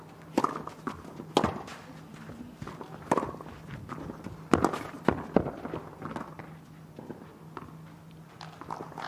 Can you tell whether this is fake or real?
real